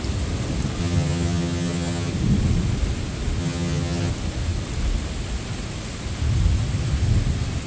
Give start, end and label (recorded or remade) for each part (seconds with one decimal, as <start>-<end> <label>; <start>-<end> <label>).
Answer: 0.0-0.8 recorded; 0.8-2.1 remade; 2.1-3.4 recorded; 3.4-4.1 remade; 4.1-7.7 recorded